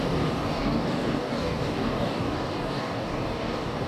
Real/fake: fake